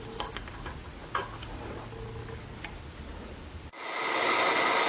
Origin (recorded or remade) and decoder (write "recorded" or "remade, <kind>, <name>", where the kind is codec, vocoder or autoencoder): recorded